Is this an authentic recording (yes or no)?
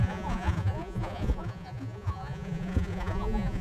no